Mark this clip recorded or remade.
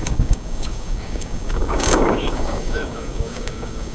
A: remade